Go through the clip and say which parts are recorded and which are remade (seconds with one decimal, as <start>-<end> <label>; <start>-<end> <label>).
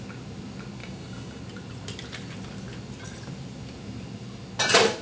0.0-0.8 recorded; 0.8-1.4 remade; 1.4-5.0 recorded